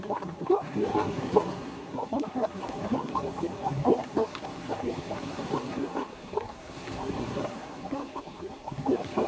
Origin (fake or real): fake